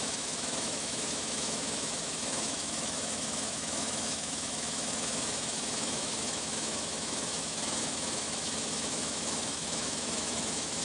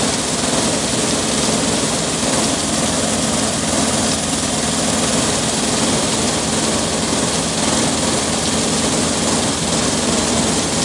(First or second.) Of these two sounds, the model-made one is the first